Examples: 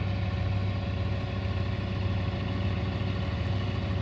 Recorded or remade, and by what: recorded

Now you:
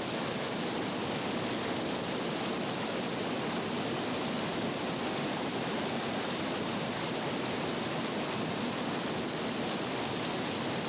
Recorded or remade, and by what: recorded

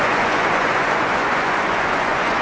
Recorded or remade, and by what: remade, vocoder, Vocos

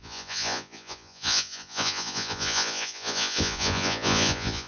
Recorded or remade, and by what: remade, vocoder, Vocos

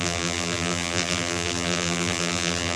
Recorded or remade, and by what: remade, vocoder, BigVGAN v2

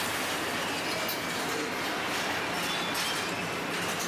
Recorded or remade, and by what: recorded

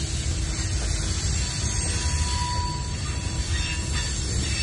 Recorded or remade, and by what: recorded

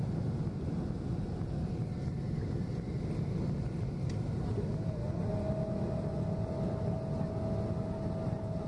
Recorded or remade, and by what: recorded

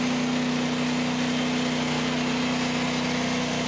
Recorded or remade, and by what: recorded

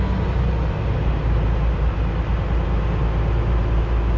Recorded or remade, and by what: recorded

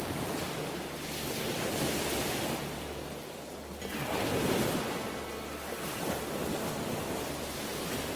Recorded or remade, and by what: recorded